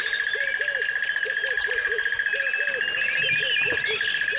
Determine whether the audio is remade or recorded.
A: recorded